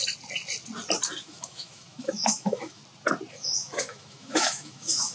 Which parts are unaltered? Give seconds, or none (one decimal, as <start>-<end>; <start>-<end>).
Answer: 0.0-1.2; 2.8-3.3